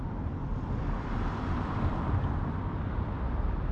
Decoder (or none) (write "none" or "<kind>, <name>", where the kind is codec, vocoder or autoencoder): vocoder, BigVGAN v2